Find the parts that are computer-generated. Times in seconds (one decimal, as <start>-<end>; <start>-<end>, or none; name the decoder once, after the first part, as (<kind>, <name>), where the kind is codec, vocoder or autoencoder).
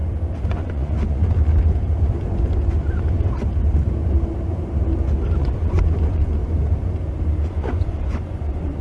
0.5-1.2 (vocoder, Vocos); 5.4-6.4; 7.4-8.8